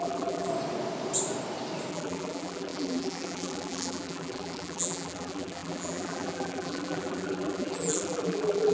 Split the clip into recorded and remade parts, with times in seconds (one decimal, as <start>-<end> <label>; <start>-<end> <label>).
0.0-0.5 remade; 0.5-1.9 recorded; 1.9-8.7 remade